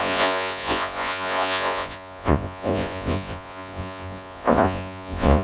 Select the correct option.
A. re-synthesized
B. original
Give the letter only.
A